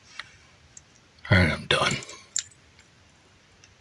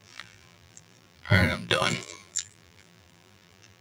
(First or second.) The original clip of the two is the first